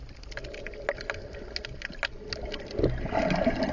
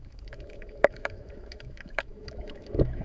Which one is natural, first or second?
first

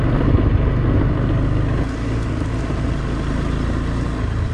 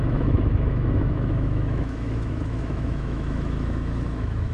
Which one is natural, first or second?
first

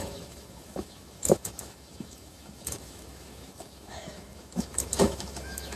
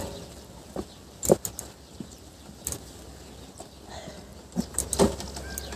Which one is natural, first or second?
second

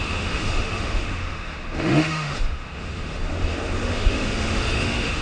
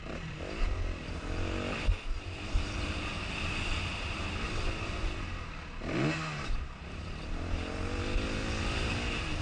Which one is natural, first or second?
second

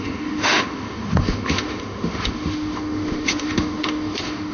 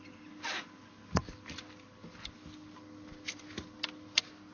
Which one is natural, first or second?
second